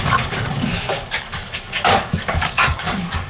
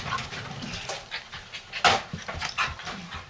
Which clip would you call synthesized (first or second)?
first